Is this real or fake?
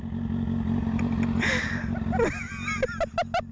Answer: real